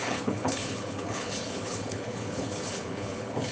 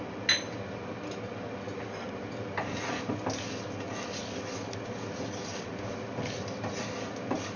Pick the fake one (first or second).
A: first